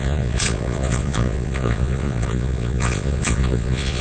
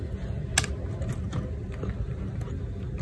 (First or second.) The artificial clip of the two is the first